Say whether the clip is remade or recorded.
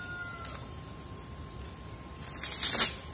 recorded